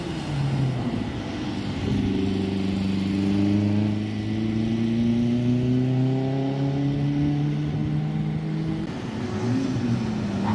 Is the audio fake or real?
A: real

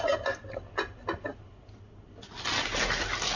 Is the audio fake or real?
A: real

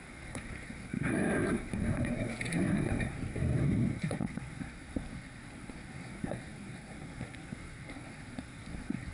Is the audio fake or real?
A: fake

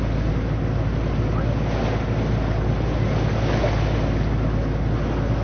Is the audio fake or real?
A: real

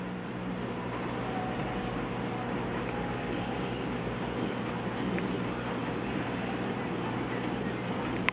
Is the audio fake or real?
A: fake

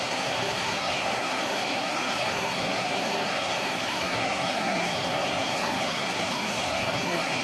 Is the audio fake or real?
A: fake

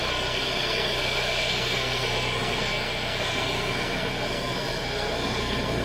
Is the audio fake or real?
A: fake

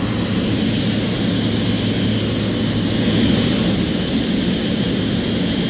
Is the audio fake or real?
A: real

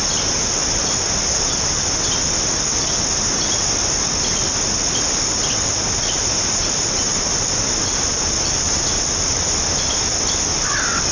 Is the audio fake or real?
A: real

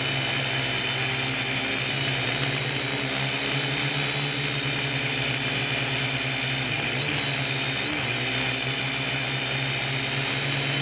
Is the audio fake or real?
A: real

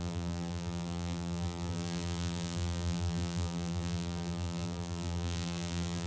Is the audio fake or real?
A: fake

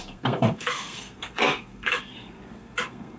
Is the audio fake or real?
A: fake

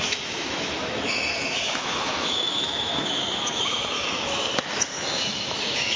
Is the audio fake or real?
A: fake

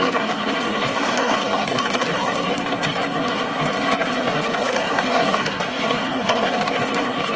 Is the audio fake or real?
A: fake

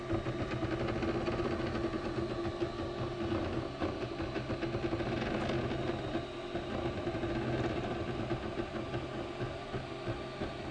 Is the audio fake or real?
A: real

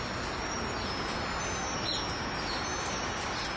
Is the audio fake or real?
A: real